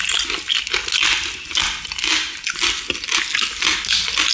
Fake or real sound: real